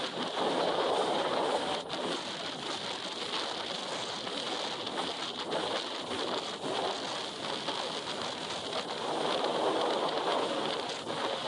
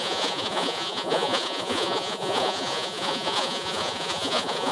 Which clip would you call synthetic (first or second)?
second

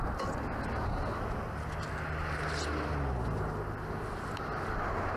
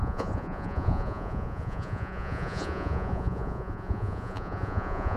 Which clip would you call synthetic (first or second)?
second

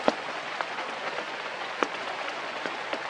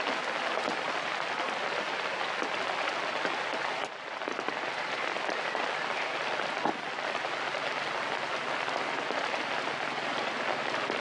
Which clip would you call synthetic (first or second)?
first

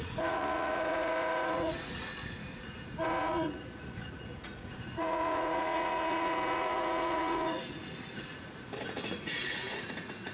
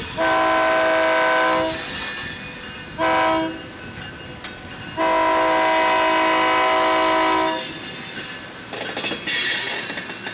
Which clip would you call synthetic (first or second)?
first